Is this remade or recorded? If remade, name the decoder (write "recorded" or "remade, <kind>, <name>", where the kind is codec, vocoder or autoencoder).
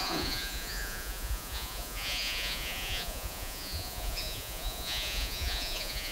remade, vocoder, Vocos